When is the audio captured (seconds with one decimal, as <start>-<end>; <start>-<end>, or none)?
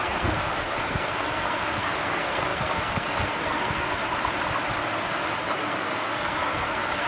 4.0-5.4